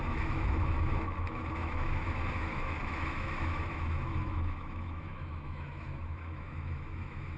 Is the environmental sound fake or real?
fake